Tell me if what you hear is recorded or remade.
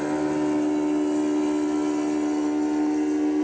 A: recorded